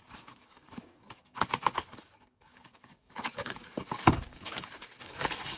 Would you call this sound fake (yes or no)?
yes